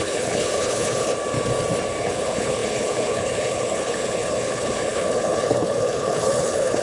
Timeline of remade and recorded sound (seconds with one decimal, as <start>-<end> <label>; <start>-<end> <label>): 0.0-1.1 remade; 1.1-2.0 recorded; 2.0-6.8 remade